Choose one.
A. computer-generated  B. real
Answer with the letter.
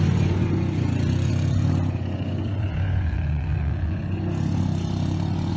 A